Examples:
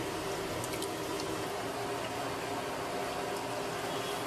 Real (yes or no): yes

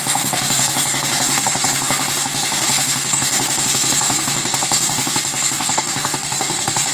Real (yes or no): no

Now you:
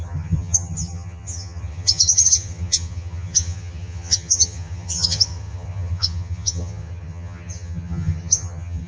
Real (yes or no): no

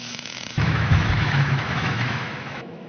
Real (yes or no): no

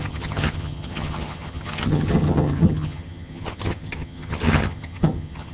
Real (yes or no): no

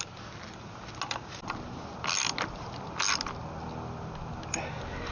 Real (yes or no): yes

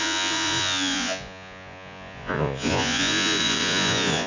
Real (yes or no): no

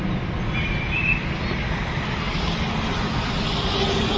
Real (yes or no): yes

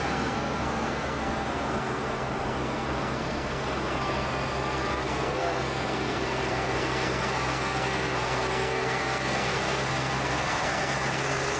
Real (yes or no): no